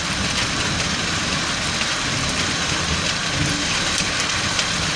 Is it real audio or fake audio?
real